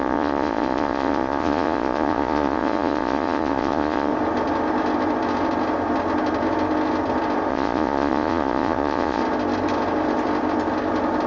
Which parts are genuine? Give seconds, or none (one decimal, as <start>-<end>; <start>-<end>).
4.1-7.5; 9.2-11.3